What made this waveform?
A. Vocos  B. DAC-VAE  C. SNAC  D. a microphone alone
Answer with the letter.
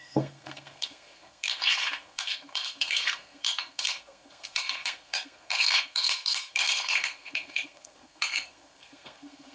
C